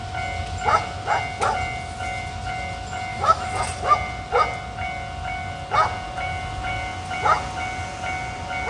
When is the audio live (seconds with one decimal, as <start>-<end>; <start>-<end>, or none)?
0.0-3.1; 3.6-8.7